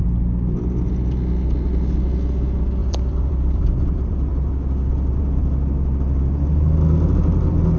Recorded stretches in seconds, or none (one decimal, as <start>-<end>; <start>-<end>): 0.0-2.8; 5.2-7.8